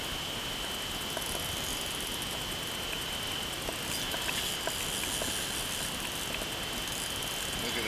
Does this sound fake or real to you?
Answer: real